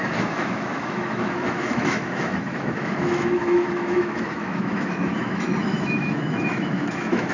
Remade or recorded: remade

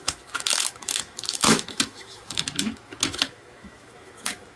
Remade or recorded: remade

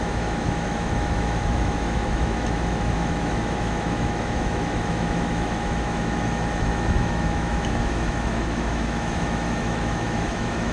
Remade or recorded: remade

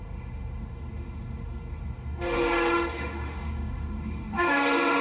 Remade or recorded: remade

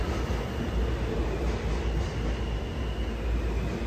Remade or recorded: recorded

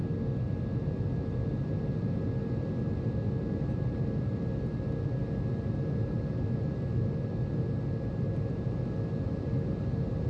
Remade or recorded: recorded